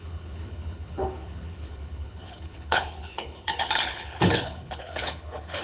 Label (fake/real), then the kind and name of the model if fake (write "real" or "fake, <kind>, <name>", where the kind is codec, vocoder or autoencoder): fake, codec, HILCodec